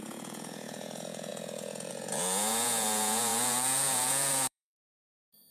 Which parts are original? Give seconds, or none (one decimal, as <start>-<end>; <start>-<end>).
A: none